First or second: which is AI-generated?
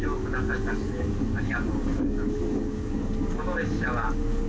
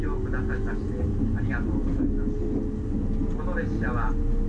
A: first